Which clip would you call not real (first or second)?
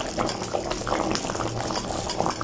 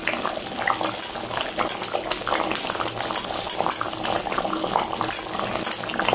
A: first